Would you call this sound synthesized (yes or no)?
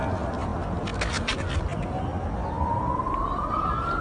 no